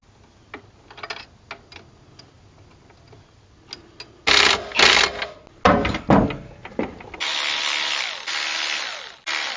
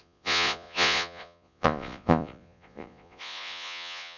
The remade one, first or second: second